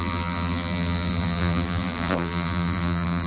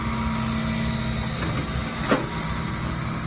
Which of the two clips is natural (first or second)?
second